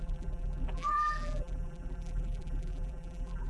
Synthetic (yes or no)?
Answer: yes